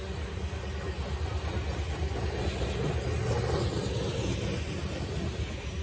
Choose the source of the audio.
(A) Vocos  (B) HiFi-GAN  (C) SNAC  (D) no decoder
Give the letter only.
D